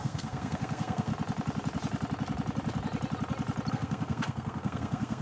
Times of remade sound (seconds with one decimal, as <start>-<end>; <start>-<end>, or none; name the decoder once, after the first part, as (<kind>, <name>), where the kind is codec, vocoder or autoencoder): 0.0-1.1 (codec, SNAC); 3.7-5.2